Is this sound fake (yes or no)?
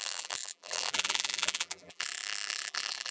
yes